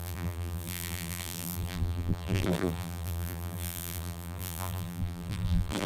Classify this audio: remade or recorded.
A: remade